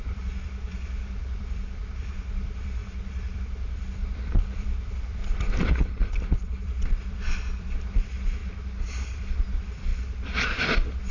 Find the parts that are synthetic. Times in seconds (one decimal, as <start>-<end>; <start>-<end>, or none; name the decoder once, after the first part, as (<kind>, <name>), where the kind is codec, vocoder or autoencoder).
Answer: 0.0-5.2 (vocoder, BigVGAN v2); 5.8-8.4; 9.0-9.9

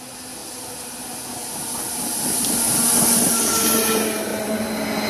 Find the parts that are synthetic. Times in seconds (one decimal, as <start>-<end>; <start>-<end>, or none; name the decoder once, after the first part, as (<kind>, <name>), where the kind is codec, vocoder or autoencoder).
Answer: none